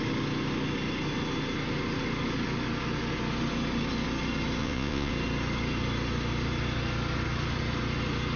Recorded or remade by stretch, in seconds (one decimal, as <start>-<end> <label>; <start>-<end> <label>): 0.0-4.6 recorded; 4.6-5.1 remade; 5.1-8.4 recorded